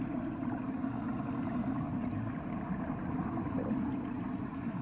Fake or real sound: real